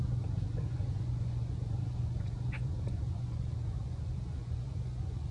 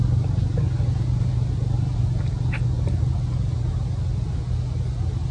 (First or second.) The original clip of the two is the second